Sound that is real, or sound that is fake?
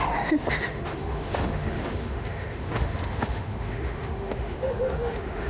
fake